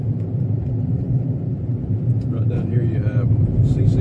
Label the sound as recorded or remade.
remade